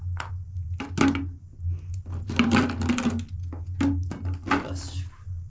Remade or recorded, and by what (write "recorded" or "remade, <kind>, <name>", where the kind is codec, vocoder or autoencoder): recorded